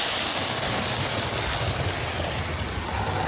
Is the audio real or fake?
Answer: real